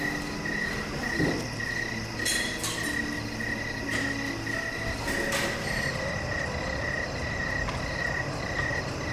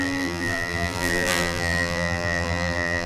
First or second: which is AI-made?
second